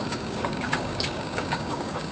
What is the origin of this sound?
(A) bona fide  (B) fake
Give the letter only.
B